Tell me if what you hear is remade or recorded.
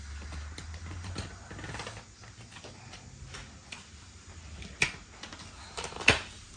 recorded